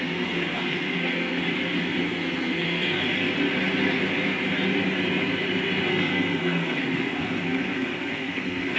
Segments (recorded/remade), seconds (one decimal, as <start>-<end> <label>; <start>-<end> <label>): 0.0-1.4 remade; 1.4-2.0 recorded; 2.0-3.0 remade; 3.0-5.9 recorded; 5.9-8.8 remade